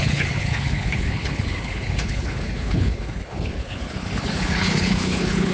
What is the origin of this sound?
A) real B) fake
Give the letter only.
B